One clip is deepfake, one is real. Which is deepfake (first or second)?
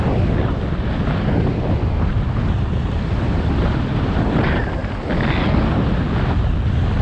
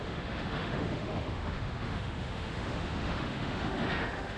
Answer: second